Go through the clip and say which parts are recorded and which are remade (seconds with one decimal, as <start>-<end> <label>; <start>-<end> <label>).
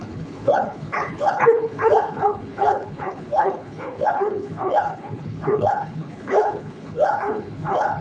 0.0-8.0 remade